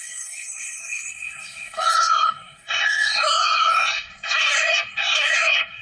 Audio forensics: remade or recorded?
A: remade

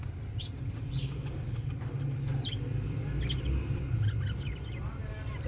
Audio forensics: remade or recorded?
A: recorded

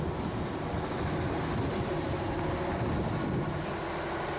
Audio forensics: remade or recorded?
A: recorded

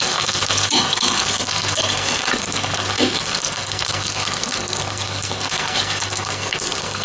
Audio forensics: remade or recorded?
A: remade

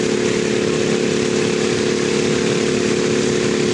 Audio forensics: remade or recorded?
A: recorded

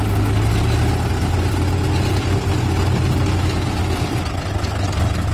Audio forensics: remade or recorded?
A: recorded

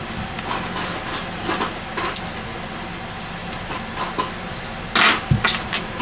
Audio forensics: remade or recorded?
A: recorded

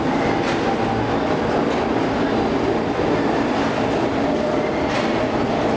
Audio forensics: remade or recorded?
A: recorded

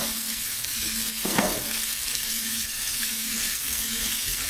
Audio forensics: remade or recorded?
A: remade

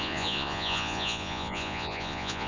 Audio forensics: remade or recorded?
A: remade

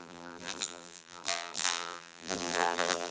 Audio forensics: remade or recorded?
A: remade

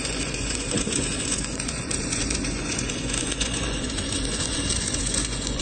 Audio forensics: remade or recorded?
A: remade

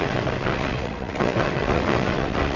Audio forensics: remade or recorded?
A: remade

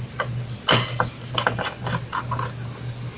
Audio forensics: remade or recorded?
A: recorded